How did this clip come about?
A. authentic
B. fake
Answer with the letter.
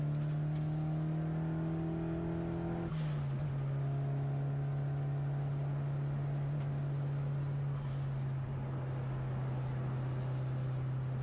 A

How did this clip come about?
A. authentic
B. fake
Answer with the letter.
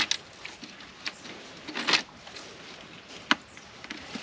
A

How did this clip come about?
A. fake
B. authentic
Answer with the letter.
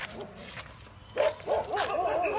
B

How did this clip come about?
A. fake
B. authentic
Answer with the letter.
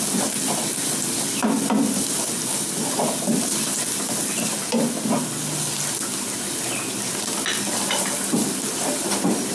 B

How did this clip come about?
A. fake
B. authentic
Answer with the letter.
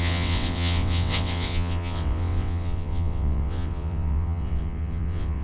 A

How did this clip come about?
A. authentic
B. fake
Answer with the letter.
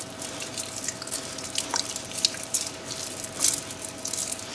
A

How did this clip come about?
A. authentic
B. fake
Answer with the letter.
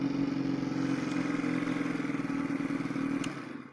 A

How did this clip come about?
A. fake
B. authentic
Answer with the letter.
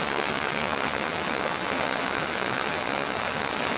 A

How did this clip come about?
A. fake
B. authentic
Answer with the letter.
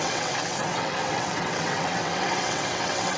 A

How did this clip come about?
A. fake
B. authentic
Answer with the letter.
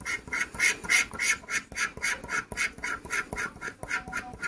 B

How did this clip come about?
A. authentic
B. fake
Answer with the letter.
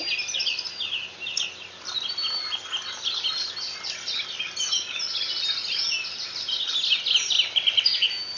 A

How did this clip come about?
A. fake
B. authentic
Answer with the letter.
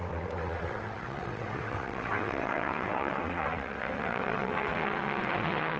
A